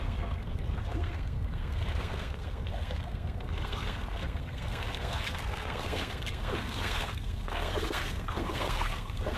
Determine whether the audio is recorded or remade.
remade